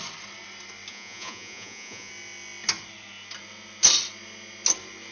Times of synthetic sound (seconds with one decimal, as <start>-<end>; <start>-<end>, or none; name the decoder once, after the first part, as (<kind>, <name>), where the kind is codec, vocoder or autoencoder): 0.9-2.1 (vocoder, Vocos)